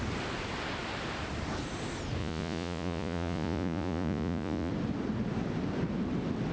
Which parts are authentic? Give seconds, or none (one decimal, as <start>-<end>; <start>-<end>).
0.0-2.2; 4.7-6.5